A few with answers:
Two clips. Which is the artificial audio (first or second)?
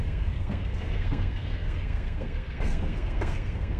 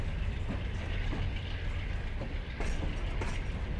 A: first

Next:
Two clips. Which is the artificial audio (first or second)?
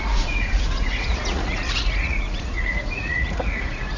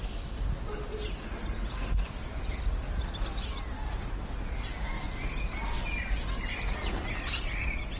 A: first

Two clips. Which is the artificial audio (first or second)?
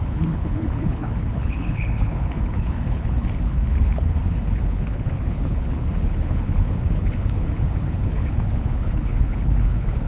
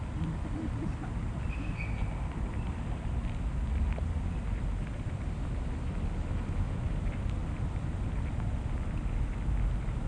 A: first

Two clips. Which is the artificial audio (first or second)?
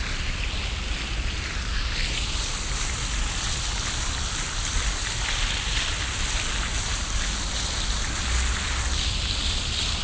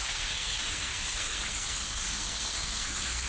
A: second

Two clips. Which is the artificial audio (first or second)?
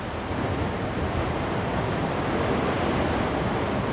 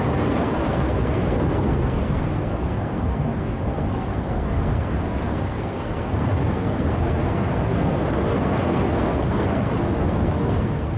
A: second